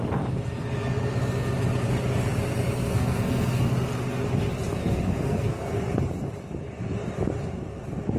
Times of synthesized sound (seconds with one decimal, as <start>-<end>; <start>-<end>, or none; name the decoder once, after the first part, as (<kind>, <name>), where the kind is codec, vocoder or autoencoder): 2.9-3.6 (codec, SNAC); 4.8-5.8